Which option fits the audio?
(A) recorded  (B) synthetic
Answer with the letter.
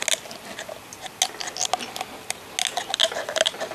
A